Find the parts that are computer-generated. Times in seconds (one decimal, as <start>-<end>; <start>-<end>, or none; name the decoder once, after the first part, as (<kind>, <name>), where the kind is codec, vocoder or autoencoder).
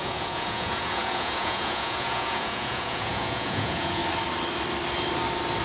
0.0-4.0 (vocoder, Vocos)